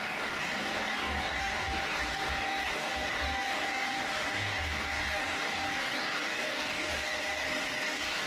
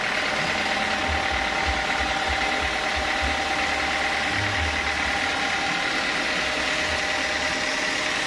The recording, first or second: second